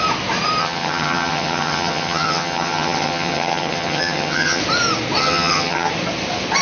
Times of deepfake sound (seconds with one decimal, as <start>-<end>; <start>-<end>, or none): 0.6-4.6; 5.2-5.9